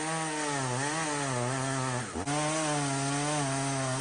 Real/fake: real